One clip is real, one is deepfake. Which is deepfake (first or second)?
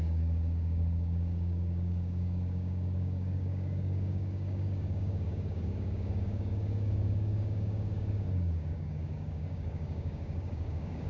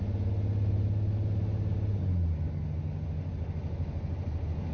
first